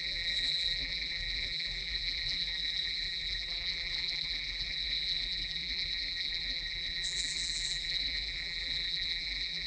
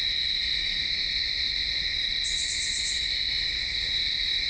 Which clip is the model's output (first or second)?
first